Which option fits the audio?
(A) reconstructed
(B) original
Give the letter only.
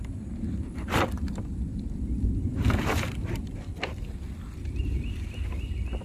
A